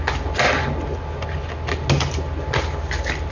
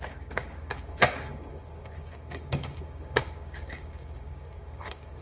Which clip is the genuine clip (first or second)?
first